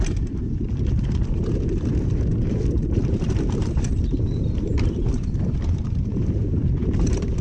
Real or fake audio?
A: fake